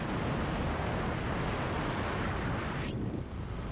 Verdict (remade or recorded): recorded